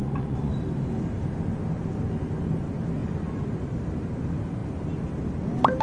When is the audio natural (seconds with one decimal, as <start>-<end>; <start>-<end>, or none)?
0.5-5.8